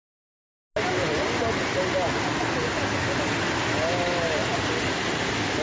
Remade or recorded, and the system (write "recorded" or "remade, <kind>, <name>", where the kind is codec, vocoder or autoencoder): recorded